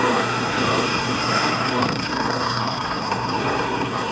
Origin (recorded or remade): remade